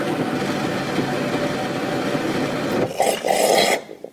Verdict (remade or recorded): recorded